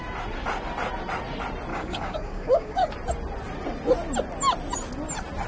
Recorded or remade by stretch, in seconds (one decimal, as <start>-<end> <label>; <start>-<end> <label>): 0.0-1.7 recorded; 1.7-2.9 remade; 2.9-5.5 recorded